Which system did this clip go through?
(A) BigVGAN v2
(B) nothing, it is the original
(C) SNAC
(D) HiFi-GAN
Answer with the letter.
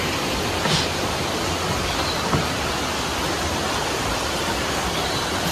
B